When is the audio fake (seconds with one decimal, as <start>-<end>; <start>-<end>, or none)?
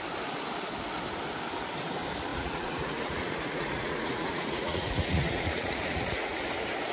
2.3-6.4